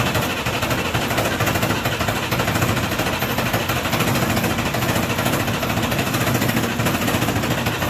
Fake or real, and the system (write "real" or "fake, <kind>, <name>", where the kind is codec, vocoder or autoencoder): fake, vocoder, BigVGAN v2